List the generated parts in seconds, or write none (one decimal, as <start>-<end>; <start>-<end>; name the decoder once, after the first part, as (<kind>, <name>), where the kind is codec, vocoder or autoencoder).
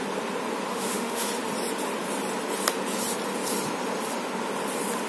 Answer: 0.7-1.3 (autoencoder, DAC-VAE)